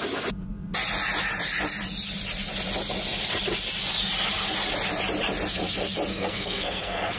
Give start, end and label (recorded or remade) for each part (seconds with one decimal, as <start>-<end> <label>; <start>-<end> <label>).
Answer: 0.0-6.1 recorded; 6.1-7.2 remade